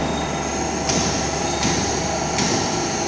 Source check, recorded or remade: recorded